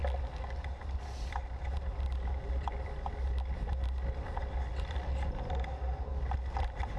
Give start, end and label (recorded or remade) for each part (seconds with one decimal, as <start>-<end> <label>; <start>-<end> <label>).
0.0-7.0 recorded